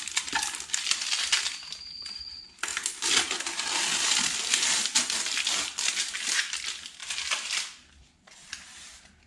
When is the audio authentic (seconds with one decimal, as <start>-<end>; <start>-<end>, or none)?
0.0-9.3